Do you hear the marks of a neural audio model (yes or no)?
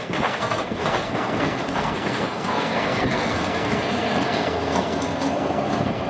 yes